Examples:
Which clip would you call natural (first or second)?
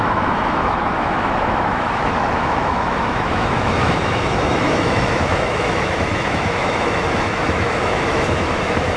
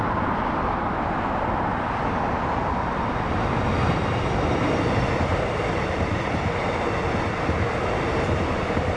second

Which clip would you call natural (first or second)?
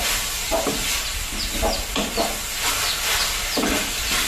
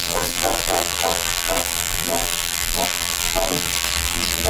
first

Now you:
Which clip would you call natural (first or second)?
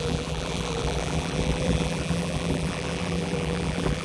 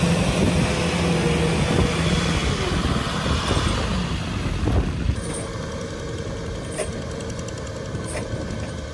second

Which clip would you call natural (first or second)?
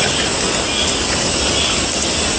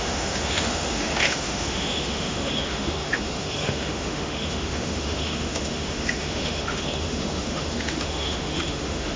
first